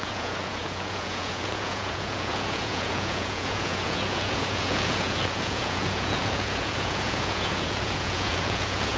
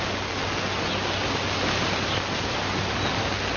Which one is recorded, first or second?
second